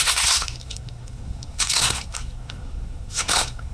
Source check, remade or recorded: remade